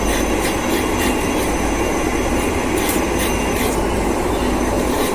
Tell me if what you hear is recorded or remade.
recorded